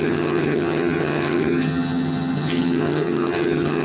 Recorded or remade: remade